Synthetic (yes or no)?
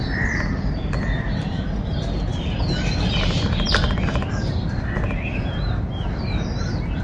no